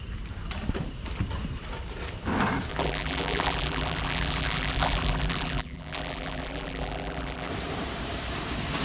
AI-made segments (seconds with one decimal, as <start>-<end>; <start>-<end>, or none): 2.7-7.5